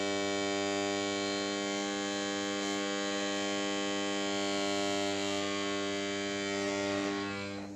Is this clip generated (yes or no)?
no